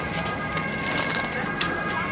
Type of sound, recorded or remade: recorded